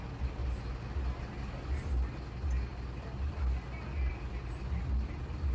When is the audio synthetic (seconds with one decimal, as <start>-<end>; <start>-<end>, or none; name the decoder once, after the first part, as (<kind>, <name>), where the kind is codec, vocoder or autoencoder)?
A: none